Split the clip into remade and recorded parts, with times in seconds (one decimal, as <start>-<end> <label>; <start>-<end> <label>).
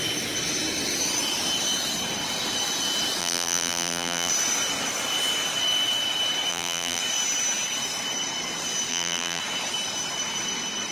0.0-3.2 recorded; 3.2-4.3 remade; 4.3-6.5 recorded; 6.5-7.0 remade; 7.0-8.9 recorded; 8.9-9.4 remade; 9.4-10.9 recorded